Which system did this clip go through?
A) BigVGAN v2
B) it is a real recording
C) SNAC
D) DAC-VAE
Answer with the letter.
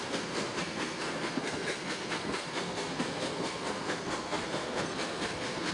C